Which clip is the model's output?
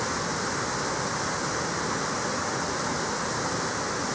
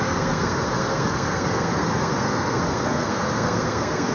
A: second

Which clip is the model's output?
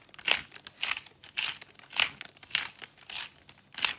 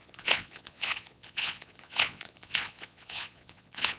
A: second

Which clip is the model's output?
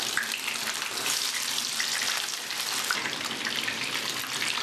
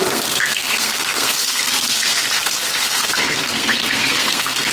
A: second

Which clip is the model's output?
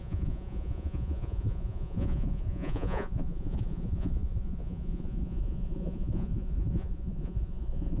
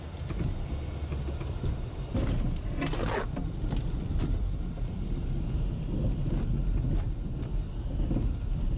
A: first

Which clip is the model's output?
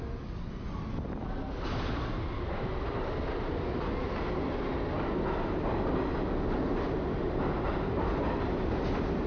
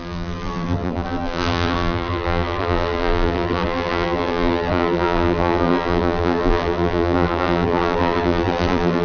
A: second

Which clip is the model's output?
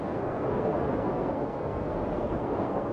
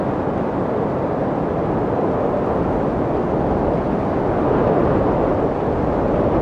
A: first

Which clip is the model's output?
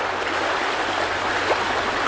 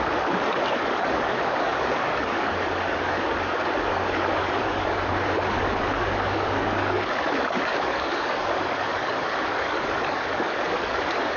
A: second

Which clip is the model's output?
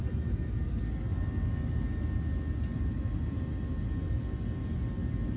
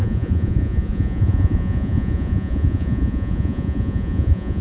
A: second